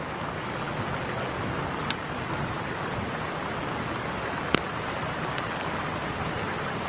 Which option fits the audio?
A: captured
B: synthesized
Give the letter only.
A